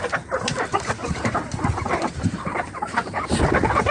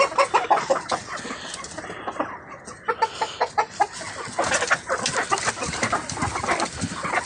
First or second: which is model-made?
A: first